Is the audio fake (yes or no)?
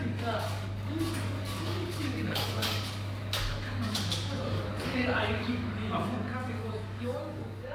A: yes